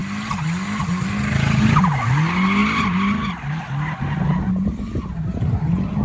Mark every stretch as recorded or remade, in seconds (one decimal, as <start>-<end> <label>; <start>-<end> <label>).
0.0-6.0 recorded